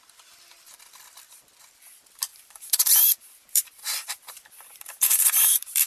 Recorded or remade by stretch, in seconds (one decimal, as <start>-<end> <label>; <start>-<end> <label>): 0.0-2.3 recorded; 2.3-5.9 remade